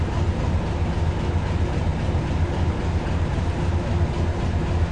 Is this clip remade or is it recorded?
recorded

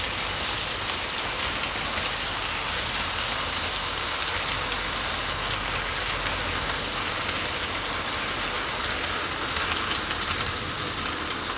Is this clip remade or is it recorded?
recorded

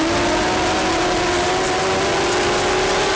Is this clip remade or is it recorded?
recorded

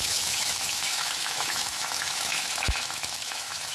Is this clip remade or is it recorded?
remade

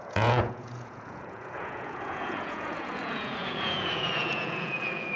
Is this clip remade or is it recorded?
remade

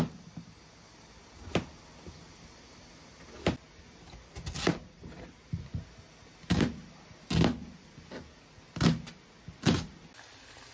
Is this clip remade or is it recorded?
recorded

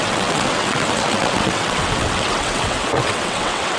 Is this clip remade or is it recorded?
remade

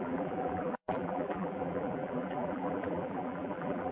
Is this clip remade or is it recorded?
remade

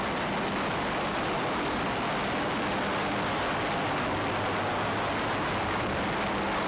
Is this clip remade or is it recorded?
recorded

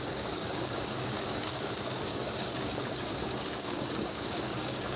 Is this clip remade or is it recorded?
remade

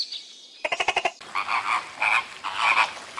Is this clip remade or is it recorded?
recorded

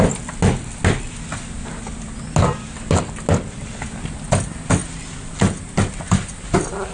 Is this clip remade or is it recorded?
recorded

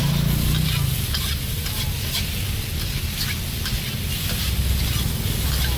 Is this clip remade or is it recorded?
recorded